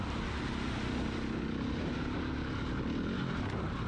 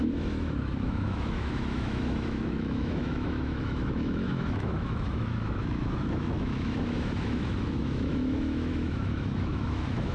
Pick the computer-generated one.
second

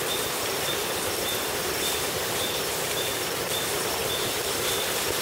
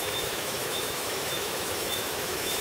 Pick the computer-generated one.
second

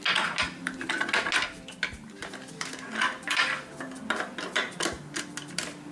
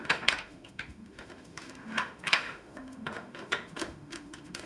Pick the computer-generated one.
second